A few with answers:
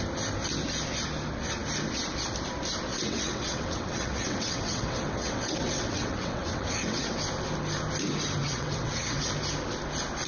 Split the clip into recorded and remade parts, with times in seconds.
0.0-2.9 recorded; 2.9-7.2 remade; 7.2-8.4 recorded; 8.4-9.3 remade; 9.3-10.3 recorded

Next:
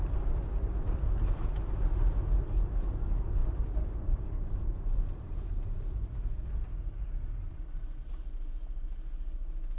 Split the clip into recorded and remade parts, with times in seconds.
0.0-3.4 recorded; 3.4-7.6 remade; 7.6-9.8 recorded